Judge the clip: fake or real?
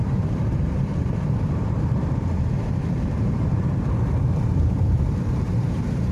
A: fake